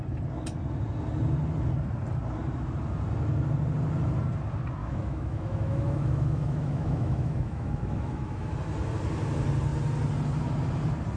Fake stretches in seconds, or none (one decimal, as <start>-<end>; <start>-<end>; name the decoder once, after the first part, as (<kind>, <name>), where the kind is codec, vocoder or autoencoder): 4.8-8.5 (autoencoder, DAC-VAE)